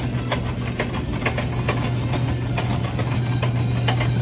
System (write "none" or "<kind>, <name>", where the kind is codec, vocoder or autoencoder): none